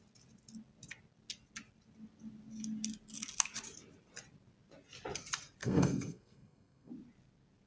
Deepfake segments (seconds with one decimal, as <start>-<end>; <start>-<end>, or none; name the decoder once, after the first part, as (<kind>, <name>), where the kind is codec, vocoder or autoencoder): 5.6-6.9 (codec, SNAC)